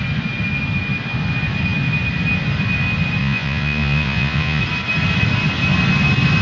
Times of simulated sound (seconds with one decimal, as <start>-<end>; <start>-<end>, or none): 3.2-4.6